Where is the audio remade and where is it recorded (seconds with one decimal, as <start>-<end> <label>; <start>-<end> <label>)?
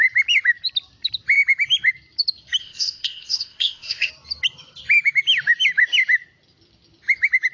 0.0-2.6 recorded; 2.6-4.1 remade; 4.1-7.5 recorded